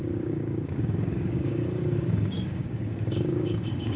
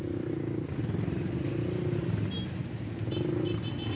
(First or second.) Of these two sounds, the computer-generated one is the first